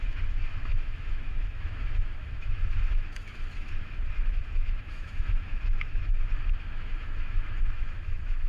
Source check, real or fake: fake